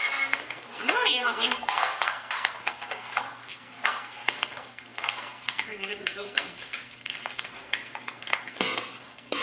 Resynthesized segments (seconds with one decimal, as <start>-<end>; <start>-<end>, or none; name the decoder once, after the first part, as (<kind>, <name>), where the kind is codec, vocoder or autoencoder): 0.0-9.4 (codec, SNAC)